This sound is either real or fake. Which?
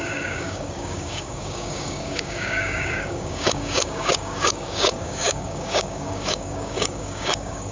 fake